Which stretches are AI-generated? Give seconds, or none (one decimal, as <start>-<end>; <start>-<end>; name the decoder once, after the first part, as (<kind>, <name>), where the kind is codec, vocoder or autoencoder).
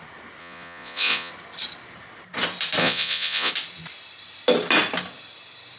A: 0.4-1.3 (vocoder, Vocos); 2.8-3.5